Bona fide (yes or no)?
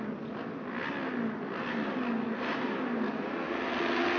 yes